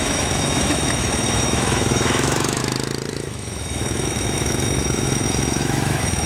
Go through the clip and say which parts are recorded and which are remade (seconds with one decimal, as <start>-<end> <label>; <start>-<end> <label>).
0.0-2.6 remade; 2.6-3.1 recorded; 3.1-6.3 remade

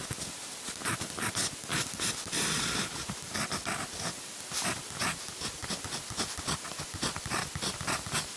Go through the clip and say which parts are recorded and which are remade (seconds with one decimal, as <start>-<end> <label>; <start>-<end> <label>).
0.0-8.4 recorded

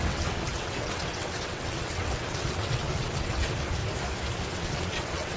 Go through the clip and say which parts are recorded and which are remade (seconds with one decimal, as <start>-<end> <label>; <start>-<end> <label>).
0.0-3.8 remade; 3.8-4.5 recorded; 4.5-5.4 remade

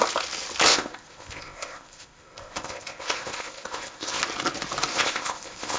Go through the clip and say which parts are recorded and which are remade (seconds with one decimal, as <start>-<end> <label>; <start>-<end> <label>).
0.0-0.7 recorded; 0.7-4.2 remade; 4.2-4.9 recorded; 4.9-5.8 remade

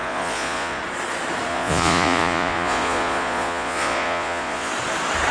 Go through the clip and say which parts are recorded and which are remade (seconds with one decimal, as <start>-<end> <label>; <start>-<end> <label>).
0.0-0.8 remade; 0.8-1.5 recorded; 1.5-4.7 remade; 4.7-5.3 recorded

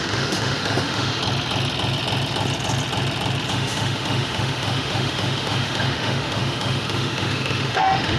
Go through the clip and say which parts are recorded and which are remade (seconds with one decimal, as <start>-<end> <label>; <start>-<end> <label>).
0.0-1.2 remade; 1.2-3.5 recorded; 3.5-8.2 remade